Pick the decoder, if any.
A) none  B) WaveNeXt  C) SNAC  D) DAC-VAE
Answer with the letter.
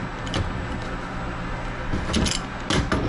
A